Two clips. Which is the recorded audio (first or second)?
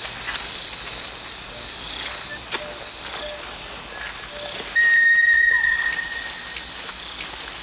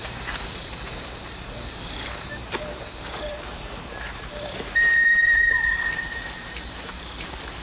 first